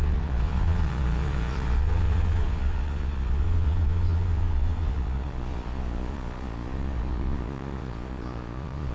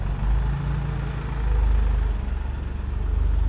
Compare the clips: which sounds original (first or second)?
second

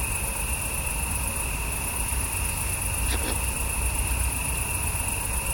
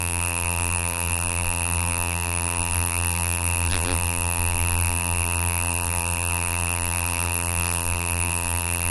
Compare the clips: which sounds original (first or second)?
first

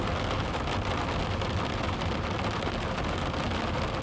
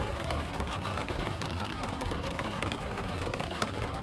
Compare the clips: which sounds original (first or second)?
first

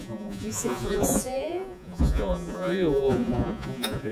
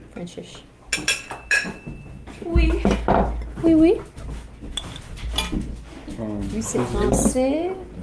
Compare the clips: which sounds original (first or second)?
second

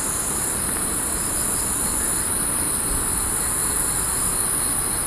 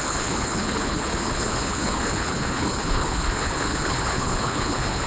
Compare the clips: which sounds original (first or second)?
first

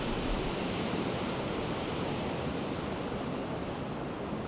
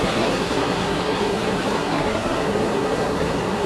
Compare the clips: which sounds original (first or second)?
first